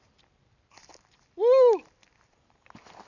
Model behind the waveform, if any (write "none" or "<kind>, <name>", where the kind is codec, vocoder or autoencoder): none